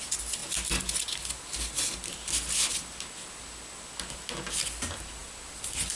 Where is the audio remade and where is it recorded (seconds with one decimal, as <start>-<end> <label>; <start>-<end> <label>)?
0.0-6.0 recorded

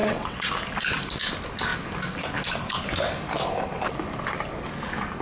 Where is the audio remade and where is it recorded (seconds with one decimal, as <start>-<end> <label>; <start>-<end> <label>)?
0.0-0.5 remade; 0.5-5.2 recorded

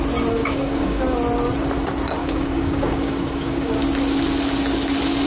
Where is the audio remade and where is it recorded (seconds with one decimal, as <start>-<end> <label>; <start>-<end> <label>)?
0.0-0.4 recorded; 0.4-1.0 remade; 1.0-2.2 recorded; 2.2-3.7 remade; 3.7-5.3 recorded